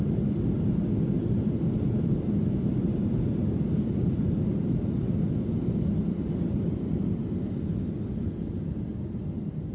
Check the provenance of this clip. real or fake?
real